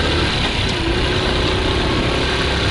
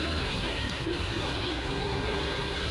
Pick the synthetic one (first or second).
second